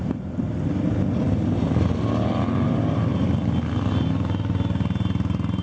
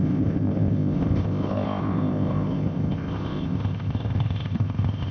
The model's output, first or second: second